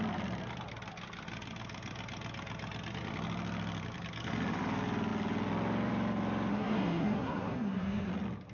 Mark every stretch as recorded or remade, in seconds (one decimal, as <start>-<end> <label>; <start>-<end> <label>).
0.0-6.5 recorded; 6.5-8.1 remade; 8.1-8.5 recorded